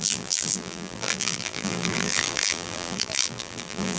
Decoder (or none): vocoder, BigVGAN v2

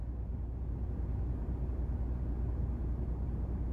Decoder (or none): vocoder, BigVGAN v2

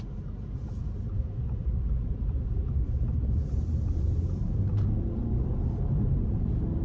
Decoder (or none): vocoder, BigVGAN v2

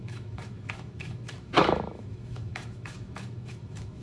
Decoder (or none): autoencoder, DAC-VAE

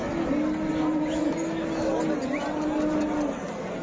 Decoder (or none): none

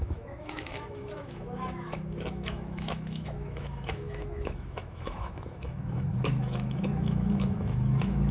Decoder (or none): autoencoder, DAC-VAE